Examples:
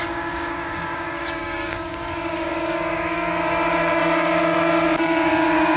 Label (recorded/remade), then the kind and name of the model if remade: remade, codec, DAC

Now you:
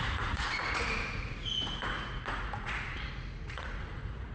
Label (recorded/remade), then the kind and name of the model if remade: remade, vocoder, Vocos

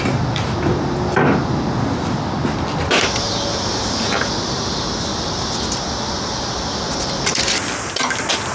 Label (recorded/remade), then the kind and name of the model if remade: recorded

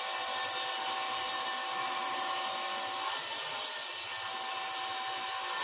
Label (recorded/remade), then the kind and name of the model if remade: recorded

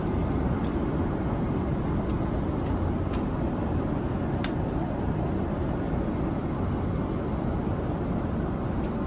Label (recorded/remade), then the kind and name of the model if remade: recorded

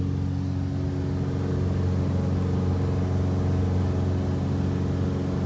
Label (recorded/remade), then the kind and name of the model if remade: recorded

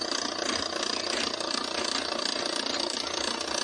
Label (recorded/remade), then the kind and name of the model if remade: recorded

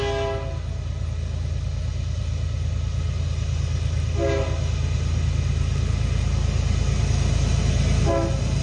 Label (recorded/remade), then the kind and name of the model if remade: recorded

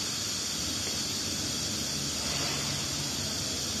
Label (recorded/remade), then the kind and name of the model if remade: recorded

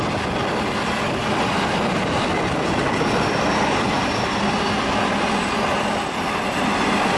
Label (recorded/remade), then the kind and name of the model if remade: recorded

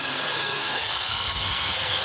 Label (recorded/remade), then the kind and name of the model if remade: remade, codec, SNAC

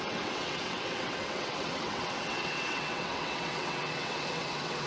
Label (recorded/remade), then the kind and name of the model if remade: remade, vocoder, WaveNeXt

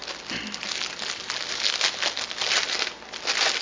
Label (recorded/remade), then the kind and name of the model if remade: recorded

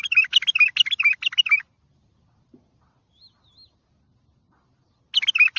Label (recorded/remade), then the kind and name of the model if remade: recorded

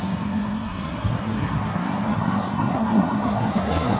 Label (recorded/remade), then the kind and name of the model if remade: remade, codec, SNAC